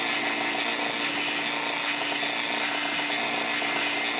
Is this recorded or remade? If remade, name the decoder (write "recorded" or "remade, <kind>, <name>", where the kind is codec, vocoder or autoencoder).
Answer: recorded